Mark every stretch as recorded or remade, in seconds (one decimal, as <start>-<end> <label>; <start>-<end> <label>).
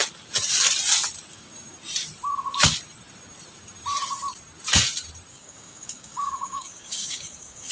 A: 0.0-5.3 recorded; 5.3-7.7 remade